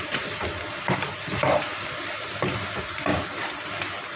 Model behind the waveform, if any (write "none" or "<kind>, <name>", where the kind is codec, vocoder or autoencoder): none